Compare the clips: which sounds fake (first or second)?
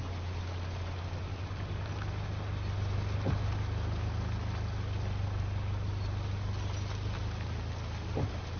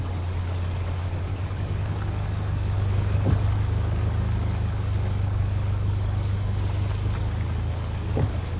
second